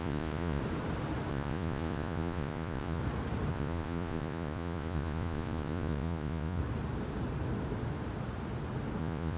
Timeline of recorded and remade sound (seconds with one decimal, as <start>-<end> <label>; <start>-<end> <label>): 0.0-0.6 remade; 0.6-1.3 recorded; 1.3-3.0 remade; 3.0-3.5 recorded; 3.5-6.6 remade; 6.6-9.0 recorded; 9.0-9.4 remade